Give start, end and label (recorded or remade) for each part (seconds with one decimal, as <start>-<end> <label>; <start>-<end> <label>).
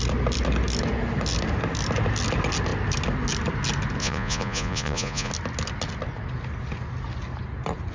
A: 0.0-4.0 recorded; 4.0-5.3 remade; 5.3-7.9 recorded